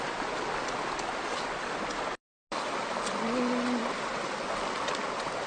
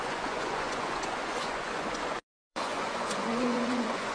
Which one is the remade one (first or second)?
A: second